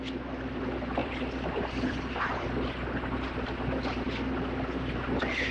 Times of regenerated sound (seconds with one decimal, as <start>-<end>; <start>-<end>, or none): 1.0-4.3